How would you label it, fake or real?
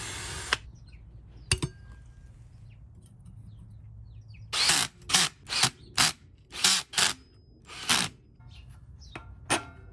real